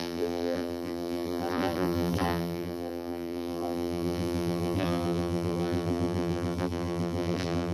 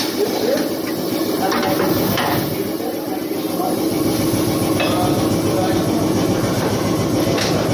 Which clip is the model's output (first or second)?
first